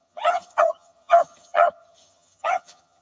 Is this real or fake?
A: fake